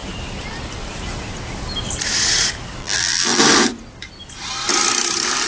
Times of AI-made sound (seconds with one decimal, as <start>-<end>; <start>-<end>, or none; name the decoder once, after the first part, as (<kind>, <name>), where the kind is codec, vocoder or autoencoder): 2.8-3.4 (vocoder, BigVGAN v2)